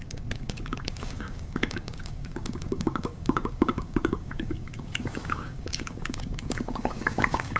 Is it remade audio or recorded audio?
remade